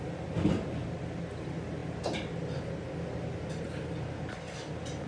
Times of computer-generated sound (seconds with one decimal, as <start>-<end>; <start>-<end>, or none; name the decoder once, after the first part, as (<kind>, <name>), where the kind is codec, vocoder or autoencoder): none